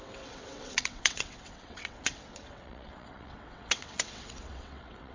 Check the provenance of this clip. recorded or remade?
remade